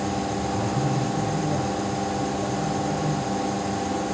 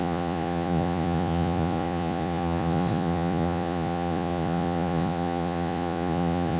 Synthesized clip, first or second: second